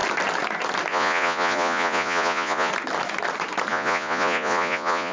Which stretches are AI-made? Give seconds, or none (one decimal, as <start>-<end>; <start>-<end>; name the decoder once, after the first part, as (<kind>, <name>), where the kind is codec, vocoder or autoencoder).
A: 0.9-2.7 (vocoder, Vocos); 3.7-5.1